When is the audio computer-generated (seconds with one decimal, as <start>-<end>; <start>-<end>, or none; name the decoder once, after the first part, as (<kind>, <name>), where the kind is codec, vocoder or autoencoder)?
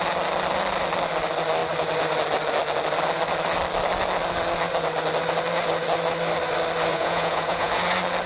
6.9-7.7 (vocoder, Vocos)